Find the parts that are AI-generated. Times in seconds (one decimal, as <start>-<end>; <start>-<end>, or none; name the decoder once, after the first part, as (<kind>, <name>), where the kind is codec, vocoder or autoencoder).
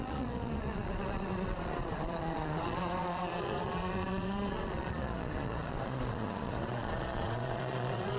0.0-8.2 (vocoder, Vocos)